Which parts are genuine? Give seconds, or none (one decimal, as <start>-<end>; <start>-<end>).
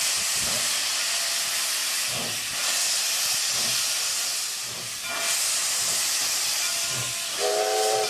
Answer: 0.0-8.1